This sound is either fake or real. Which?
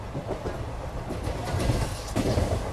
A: real